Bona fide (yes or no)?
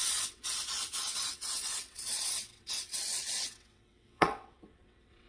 no